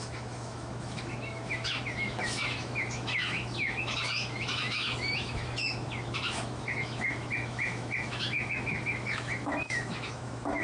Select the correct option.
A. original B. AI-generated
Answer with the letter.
B